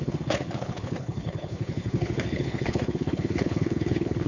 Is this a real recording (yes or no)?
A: no